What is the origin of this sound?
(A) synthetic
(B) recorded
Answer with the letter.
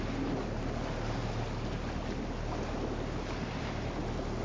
B